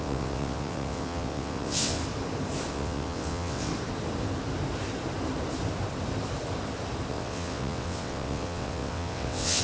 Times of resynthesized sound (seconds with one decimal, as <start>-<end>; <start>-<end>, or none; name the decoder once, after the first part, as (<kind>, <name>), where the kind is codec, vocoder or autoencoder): 0.0-2.0 (vocoder, WaveNeXt); 2.7-3.7; 7.1-9.6